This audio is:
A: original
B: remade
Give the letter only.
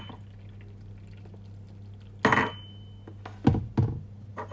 A